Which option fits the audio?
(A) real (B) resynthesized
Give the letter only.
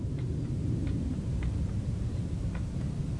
B